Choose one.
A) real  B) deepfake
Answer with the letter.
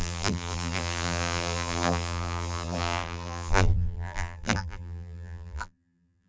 B